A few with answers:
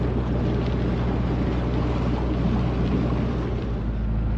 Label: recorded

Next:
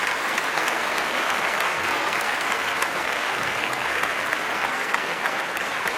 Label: remade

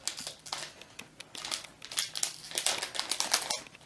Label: recorded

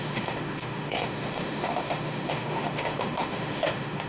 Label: remade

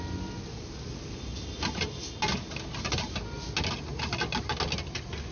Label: recorded